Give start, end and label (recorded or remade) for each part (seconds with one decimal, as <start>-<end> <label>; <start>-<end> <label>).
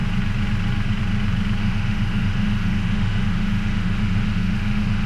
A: 0.0-1.6 recorded; 1.6-5.1 remade